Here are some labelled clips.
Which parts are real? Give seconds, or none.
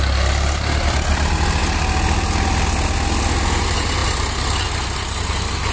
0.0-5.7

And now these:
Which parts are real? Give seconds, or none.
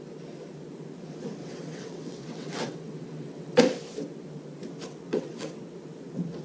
0.0-1.4; 3.6-5.1; 5.6-6.4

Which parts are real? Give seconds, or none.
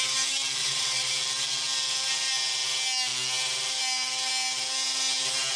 0.0-0.6; 1.1-5.6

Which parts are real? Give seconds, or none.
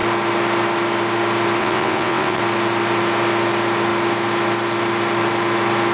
0.0-1.6; 2.4-5.9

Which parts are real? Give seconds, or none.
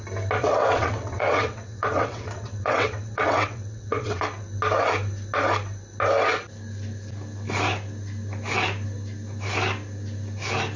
0.0-0.4; 4.2-10.8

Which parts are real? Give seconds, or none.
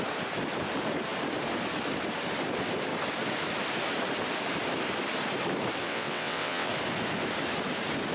0.0-5.8; 6.7-8.1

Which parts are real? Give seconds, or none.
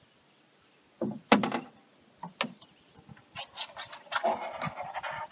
0.0-5.3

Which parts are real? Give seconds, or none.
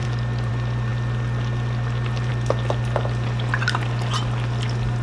0.0-5.0